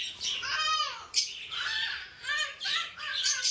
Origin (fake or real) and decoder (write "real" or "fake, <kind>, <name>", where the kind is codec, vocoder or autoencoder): real